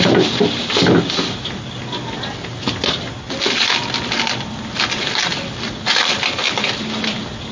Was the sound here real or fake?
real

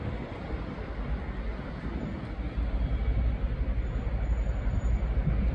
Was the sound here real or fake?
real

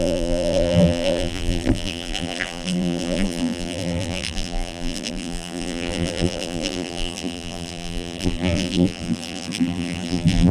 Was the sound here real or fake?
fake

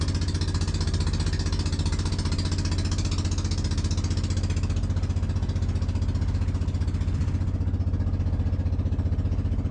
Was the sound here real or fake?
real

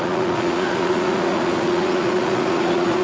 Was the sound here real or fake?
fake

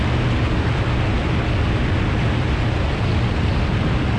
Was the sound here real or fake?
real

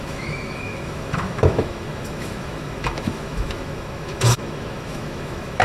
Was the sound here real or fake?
fake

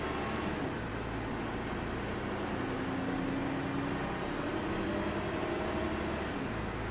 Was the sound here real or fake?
real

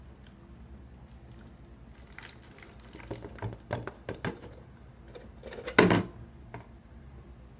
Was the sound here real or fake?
real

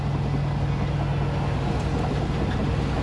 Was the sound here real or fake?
real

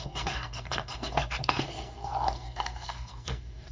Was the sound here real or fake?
fake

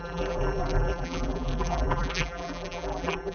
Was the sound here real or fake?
fake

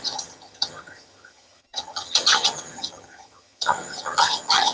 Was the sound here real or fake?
fake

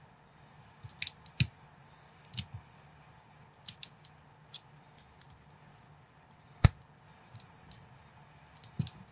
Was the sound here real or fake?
real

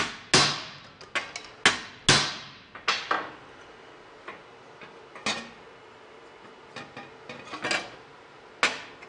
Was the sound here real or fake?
real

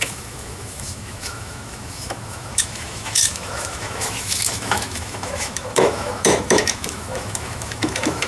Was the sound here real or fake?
fake